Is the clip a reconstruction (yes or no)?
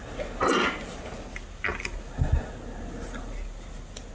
no